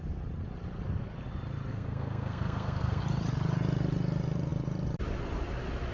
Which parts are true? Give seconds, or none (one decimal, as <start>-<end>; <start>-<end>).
0.0-1.7; 3.0-5.9